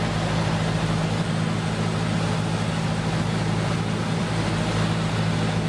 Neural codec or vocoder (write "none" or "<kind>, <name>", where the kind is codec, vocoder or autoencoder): none